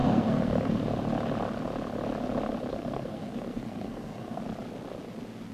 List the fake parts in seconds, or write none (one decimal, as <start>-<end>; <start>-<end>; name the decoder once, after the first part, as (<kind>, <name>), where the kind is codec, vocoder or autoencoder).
0.0-0.7 (codec, SNAC); 2.7-4.4